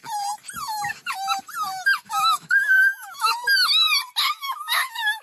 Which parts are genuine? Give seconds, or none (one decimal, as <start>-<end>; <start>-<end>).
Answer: 0.0-2.1; 3.3-4.2